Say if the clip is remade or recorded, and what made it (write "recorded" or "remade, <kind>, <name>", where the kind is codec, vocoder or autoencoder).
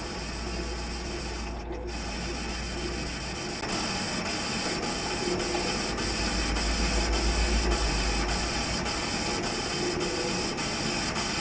recorded